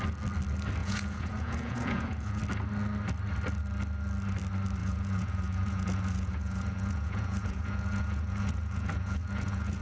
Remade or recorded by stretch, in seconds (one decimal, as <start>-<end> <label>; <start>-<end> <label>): 0.0-0.8 recorded; 0.8-2.4 remade; 2.4-4.8 recorded; 4.8-9.8 remade